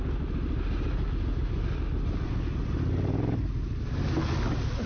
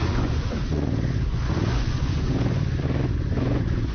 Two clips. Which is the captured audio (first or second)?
first